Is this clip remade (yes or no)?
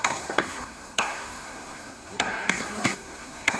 yes